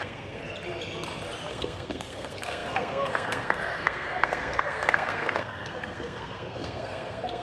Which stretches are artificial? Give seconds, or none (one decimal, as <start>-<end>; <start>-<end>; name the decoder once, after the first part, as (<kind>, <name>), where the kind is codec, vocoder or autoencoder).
0.0-0.4 (codec, SNAC); 1.5-7.4

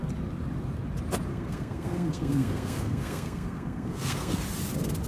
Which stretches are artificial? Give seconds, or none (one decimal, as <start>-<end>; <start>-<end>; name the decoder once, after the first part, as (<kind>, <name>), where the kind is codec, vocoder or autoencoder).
1.3-4.4 (codec, SNAC)

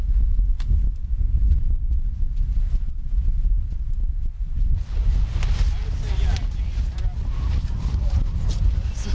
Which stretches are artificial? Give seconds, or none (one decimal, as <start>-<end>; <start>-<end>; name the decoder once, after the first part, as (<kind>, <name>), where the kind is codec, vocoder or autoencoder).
none

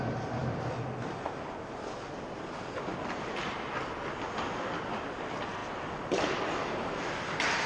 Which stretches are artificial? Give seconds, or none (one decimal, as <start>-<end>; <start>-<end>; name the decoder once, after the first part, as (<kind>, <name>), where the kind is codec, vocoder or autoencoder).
none

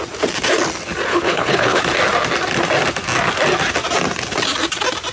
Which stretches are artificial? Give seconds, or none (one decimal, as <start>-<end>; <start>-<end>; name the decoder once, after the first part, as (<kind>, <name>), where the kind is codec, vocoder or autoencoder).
1.1-1.8 (codec, HILCodec)

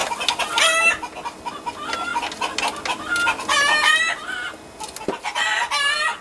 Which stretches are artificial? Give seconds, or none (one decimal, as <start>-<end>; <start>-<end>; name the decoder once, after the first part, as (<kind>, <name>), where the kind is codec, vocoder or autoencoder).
none

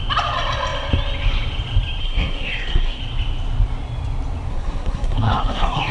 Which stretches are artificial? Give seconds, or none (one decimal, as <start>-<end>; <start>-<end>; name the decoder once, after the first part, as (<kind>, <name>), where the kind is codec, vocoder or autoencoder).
2.0-3.0 (codec, SNAC); 4.5-5.9